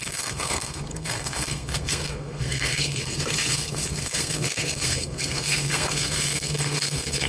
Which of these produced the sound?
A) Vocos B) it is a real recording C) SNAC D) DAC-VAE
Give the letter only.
C